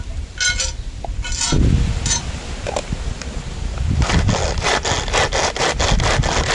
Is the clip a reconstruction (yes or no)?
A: no